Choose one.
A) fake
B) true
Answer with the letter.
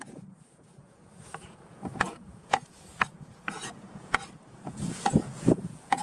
A